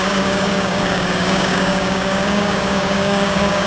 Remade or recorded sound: remade